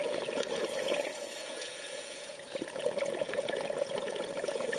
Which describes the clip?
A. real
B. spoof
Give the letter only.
B